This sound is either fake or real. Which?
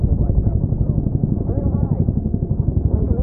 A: fake